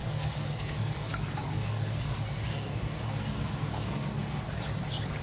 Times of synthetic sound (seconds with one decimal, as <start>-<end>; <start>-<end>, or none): 0.0-1.1; 1.5-4.6